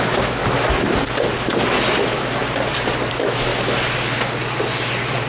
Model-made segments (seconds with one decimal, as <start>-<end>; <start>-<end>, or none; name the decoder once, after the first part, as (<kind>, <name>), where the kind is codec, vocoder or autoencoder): 0.0-0.4 (autoencoder, DAC-VAE); 2.0-2.4; 3.1-3.5